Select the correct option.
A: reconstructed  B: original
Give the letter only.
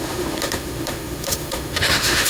A